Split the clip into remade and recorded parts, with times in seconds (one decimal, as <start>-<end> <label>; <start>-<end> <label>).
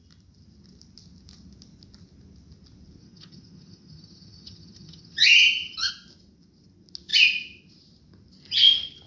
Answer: 0.0-3.0 recorded; 3.0-5.9 remade; 5.9-9.1 recorded